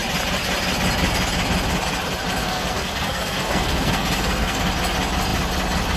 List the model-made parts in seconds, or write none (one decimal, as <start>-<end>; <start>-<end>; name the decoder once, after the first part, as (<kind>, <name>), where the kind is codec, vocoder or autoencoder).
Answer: 2.4-4.7 (codec, SNAC)